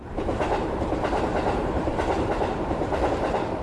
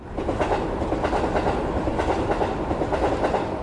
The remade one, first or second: first